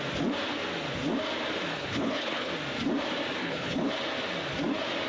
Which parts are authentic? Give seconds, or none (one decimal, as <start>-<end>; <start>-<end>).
0.0-1.7; 2.5-3.4; 3.9-5.1